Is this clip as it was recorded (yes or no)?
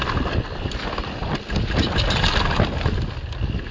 yes